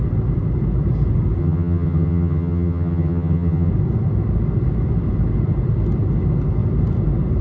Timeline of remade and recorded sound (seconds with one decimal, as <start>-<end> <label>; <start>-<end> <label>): 0.0-1.4 recorded; 1.4-3.7 remade; 3.7-7.4 recorded